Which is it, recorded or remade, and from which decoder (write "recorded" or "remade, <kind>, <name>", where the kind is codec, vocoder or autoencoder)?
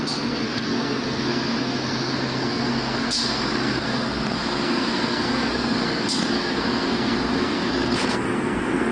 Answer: remade, codec, SNAC